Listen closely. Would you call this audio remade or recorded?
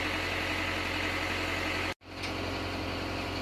recorded